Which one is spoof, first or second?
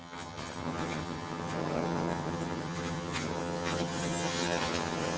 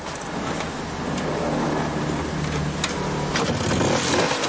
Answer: first